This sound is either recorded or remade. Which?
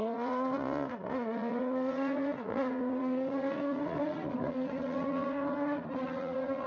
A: remade